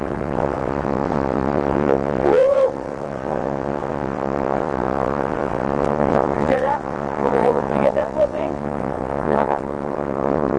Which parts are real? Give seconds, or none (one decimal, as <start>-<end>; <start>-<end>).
none